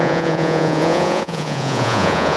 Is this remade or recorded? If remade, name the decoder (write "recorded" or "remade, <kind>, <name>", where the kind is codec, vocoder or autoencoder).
remade, vocoder, Vocos